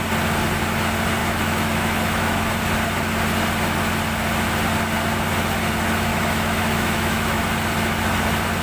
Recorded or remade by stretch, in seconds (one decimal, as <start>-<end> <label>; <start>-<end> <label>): 0.0-1.2 recorded; 1.2-2.5 remade; 2.5-6.1 recorded; 6.1-7.4 remade; 7.4-8.6 recorded